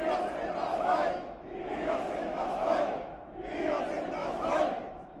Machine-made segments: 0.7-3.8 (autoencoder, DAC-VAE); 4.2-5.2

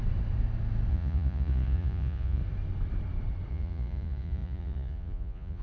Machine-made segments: 0.9-2.4 (vocoder, Vocos); 3.5-5.6

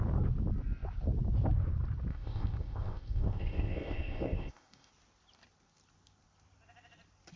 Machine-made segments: 2.1-4.9 (codec, ZipCodec)

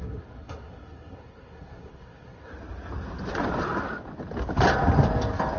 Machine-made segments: 0.0-2.5 (codec, SNAC)

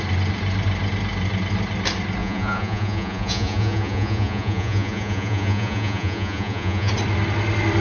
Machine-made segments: 2.2-6.9 (vocoder, Vocos)